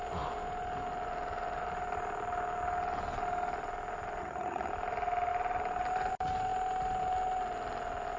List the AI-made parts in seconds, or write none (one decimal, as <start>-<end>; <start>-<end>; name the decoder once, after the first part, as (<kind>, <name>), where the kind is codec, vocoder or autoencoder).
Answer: 4.2-4.7 (vocoder, HiFi-GAN)